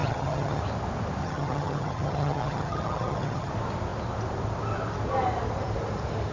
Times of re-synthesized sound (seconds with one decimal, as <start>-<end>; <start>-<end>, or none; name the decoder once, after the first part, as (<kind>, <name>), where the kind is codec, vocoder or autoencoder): 0.0-0.6 (vocoder, HiFi-GAN); 1.2-3.5